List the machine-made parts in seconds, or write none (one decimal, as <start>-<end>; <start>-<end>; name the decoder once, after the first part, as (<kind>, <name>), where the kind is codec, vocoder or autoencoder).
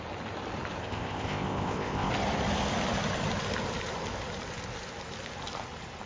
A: 0.8-2.1 (codec, ZipCodec)